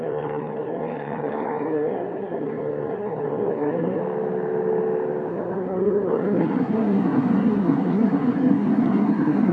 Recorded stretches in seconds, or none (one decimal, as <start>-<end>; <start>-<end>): 4.0-5.3